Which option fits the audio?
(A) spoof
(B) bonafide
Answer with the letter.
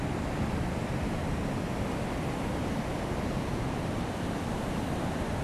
A